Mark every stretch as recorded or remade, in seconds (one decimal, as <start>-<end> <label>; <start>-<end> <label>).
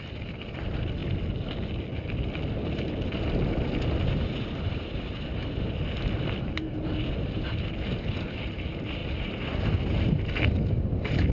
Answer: 0.0-11.3 recorded